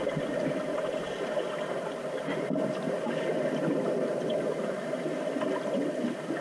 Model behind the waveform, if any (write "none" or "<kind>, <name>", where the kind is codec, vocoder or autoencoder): none